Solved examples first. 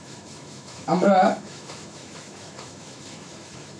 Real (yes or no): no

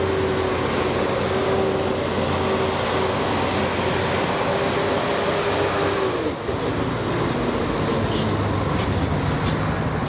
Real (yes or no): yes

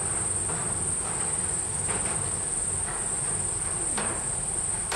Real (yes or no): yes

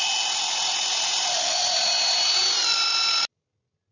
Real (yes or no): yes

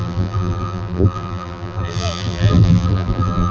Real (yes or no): no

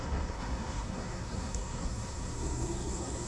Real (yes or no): no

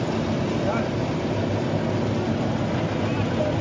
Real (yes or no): yes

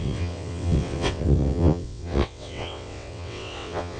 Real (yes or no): no